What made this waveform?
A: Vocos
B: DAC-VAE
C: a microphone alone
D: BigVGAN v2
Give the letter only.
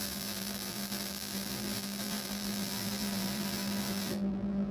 D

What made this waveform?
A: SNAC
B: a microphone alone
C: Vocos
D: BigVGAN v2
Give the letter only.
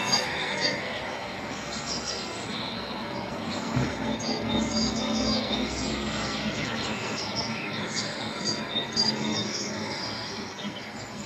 A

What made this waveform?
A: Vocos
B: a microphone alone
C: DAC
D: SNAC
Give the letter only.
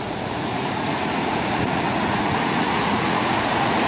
A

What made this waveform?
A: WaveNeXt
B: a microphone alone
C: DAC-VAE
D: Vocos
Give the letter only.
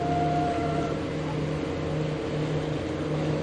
B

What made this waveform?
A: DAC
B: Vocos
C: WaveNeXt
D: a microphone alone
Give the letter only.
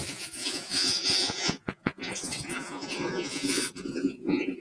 B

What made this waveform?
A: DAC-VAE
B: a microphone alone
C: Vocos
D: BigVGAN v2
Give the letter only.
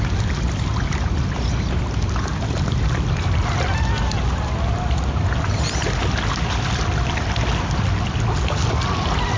B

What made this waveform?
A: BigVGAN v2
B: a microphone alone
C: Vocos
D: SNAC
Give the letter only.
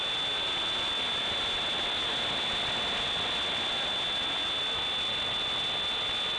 B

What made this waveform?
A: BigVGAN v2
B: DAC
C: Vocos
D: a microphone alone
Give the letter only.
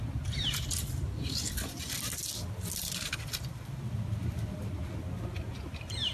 D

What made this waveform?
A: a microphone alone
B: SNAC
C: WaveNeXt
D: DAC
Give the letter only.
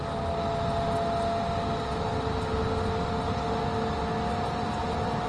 A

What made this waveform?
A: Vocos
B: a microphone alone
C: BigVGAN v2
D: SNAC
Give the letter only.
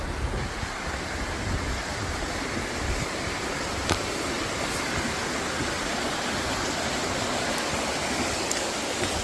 B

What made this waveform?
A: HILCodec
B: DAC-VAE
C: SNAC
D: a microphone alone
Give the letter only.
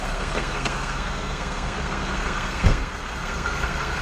C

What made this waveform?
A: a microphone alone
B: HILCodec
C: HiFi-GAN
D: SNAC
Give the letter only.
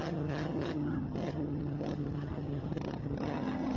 C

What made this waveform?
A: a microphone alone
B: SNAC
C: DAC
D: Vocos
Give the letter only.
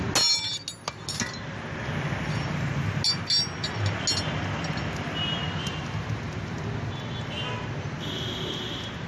A